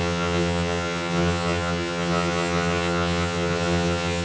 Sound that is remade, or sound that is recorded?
remade